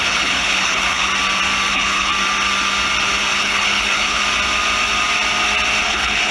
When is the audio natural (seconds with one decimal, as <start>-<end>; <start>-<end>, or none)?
1.1-1.7; 2.1-3.4; 4.2-5.8